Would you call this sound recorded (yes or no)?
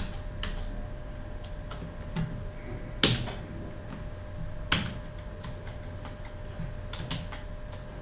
yes